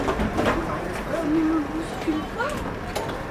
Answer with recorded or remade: recorded